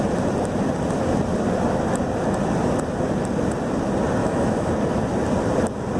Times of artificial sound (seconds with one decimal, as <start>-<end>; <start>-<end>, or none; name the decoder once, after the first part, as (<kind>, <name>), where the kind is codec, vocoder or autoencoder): 4.2-4.7 (autoencoder, DAC-VAE)